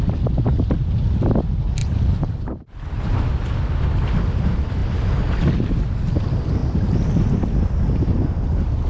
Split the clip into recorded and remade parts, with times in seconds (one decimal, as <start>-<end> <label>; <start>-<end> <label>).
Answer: 0.0-1.8 recorded; 1.8-3.2 remade; 3.2-6.6 recorded; 6.6-7.7 remade; 7.7-8.9 recorded